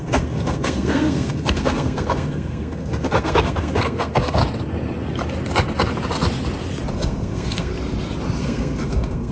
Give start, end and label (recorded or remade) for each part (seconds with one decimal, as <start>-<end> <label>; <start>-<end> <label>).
0.0-4.4 remade; 4.4-6.9 recorded; 6.9-7.7 remade; 7.7-8.4 recorded; 8.4-9.3 remade